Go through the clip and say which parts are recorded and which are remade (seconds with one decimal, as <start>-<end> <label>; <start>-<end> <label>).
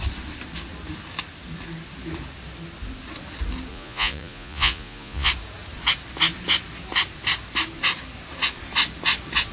0.0-3.7 recorded; 3.7-5.3 remade; 5.3-9.5 recorded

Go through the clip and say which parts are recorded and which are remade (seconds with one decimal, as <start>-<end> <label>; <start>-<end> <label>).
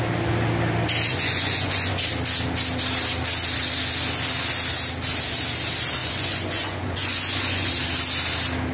0.0-1.1 recorded; 1.1-2.0 remade; 2.0-6.0 recorded; 6.0-7.7 remade; 7.7-8.7 recorded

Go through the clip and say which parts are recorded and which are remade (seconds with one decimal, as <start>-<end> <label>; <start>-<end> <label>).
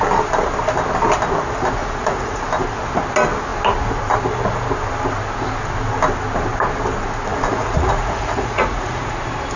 0.0-1.8 recorded; 1.8-2.4 remade; 2.4-7.3 recorded; 7.3-9.1 remade; 9.1-9.6 recorded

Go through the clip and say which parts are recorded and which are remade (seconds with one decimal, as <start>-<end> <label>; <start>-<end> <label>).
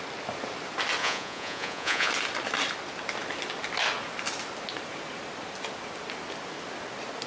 0.0-1.0 recorded; 1.0-2.1 remade; 2.1-7.3 recorded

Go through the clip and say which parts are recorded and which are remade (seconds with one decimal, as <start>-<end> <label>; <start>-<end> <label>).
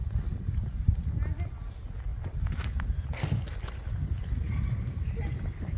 0.0-5.8 recorded